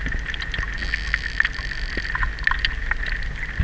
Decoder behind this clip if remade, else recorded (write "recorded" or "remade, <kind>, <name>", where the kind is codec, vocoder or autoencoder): recorded